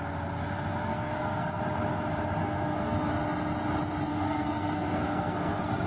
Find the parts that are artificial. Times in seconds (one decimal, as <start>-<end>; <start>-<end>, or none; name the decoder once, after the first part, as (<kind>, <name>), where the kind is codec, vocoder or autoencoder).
0.9-1.6 (codec, SNAC); 2.4-3.1; 4.1-5.9